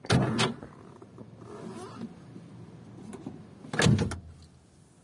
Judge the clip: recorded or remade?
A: recorded